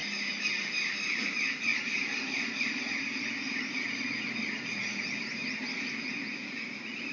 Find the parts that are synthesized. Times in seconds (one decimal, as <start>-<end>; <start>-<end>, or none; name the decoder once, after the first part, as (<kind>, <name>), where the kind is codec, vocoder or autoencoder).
1.0-5.4 (vocoder, Vocos); 5.9-7.1